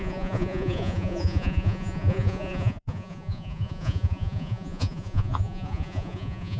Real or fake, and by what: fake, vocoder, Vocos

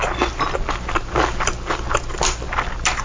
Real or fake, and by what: real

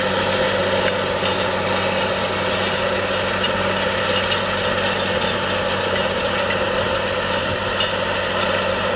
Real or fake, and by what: real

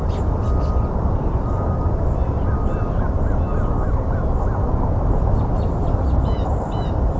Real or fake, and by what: real